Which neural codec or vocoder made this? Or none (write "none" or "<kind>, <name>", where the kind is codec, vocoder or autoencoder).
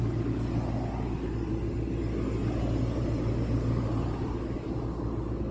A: none